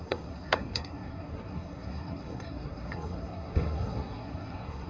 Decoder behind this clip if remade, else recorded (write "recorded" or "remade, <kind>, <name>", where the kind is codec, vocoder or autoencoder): remade, codec, SNAC